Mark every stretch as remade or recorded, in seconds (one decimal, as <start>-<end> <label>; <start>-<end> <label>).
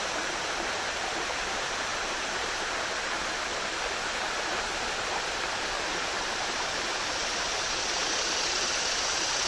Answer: 0.0-9.5 remade